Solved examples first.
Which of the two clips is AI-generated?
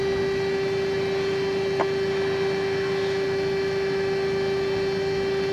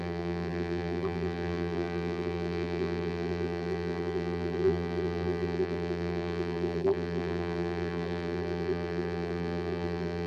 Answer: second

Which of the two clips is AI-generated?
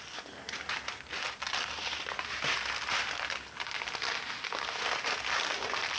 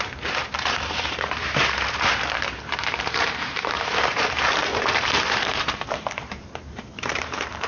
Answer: second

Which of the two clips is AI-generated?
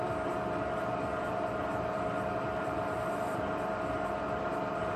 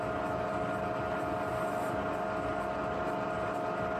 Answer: first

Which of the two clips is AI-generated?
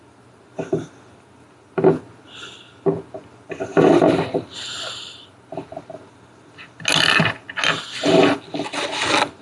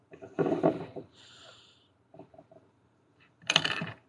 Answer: second